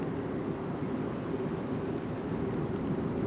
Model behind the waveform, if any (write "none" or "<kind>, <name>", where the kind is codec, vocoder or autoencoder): none